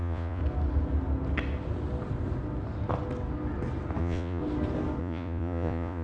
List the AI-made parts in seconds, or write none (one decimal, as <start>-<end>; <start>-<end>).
0.0-0.4; 4.0-4.4; 5.0-6.0